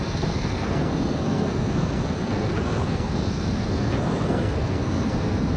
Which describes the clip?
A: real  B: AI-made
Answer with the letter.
B